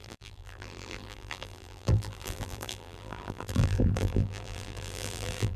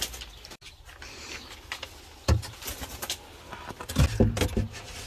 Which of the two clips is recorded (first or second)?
second